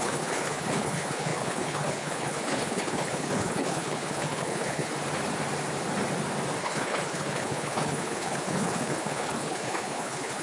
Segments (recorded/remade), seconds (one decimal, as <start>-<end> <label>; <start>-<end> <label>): 0.0-4.9 remade; 4.9-6.6 recorded; 6.6-10.4 remade